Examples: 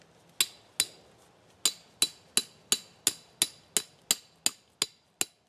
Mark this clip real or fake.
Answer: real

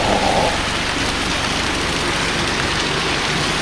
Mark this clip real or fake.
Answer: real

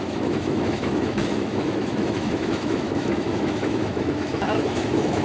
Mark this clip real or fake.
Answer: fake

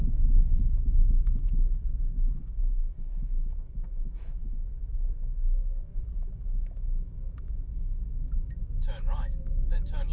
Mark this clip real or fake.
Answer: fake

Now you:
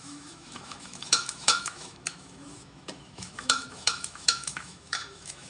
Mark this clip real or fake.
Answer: fake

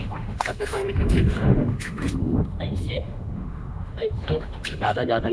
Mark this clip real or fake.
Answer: fake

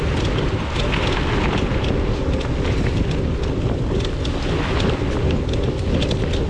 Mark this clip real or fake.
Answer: real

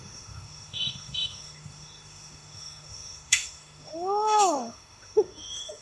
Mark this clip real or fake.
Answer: fake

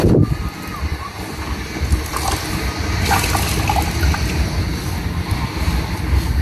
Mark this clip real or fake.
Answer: real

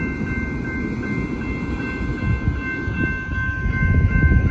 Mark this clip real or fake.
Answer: real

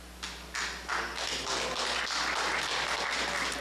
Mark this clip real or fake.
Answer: real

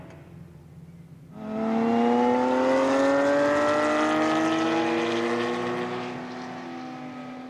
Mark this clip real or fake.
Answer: real